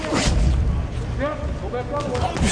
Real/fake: real